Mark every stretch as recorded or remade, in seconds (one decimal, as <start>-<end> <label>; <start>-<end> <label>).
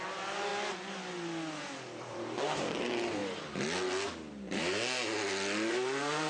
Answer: 0.0-0.5 remade; 0.5-2.1 recorded; 2.1-3.2 remade; 3.2-5.7 recorded; 5.7-6.3 remade